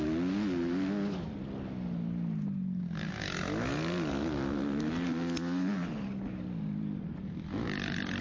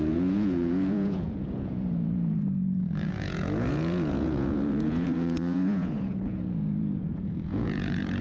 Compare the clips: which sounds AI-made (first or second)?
second